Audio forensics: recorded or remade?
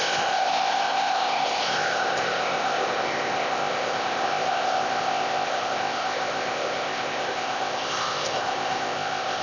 remade